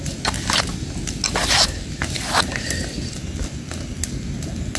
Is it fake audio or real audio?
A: real